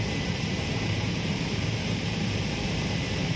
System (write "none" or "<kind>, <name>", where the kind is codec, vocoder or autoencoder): vocoder, BigVGAN v2